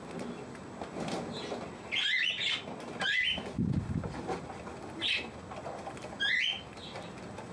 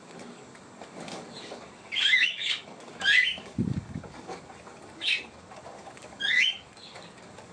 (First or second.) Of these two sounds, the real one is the first